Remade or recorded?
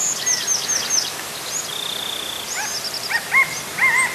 recorded